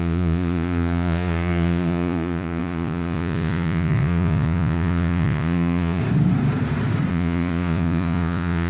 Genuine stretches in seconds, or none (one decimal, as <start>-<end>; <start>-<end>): 6.0-7.1